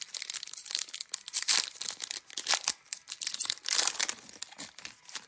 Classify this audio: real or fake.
real